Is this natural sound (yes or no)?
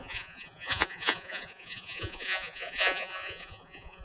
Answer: no